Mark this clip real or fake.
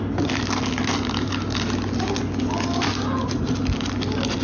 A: real